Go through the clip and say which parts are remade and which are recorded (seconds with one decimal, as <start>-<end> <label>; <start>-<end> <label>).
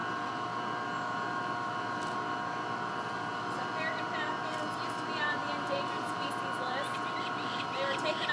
0.0-5.4 recorded; 5.4-6.3 remade; 6.3-8.3 recorded